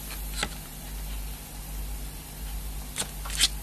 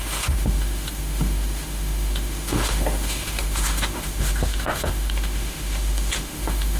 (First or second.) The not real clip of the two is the second